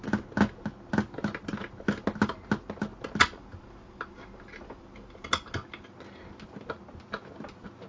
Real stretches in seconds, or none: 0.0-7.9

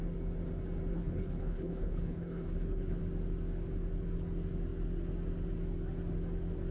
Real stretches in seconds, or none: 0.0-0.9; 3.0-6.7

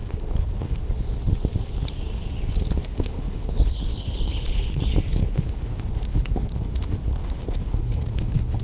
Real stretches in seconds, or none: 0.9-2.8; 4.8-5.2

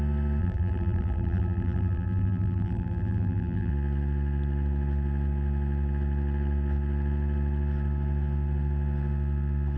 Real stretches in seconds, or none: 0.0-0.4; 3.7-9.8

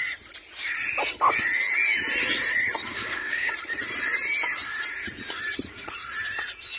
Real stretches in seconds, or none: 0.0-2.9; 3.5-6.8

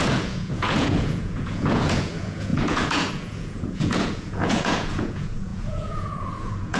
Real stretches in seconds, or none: none